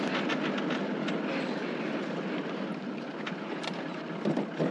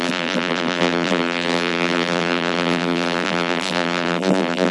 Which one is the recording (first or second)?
first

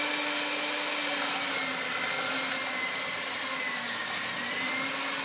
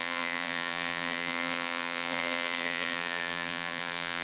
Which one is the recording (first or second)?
first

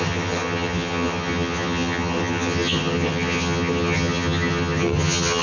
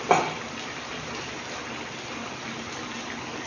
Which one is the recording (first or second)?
second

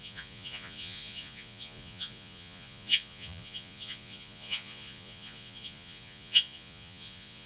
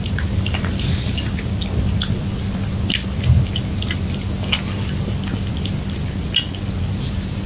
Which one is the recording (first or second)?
second